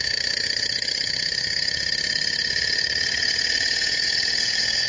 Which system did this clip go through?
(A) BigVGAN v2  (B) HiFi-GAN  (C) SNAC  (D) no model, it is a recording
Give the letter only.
B